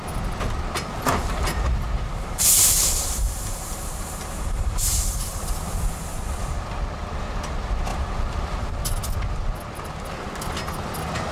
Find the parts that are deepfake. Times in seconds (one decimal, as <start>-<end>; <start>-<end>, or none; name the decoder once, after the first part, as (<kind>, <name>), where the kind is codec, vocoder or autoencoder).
2.1-5.1 (vocoder, BigVGAN v2); 7.9-8.9

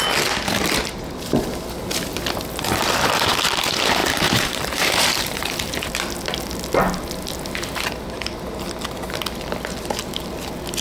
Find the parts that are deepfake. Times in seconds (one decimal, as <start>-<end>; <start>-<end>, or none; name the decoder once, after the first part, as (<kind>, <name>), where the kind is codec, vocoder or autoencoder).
4.0-5.9 (vocoder, BigVGAN v2)